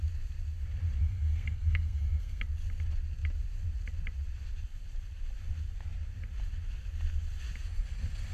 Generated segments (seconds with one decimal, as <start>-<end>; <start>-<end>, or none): 1.0-2.4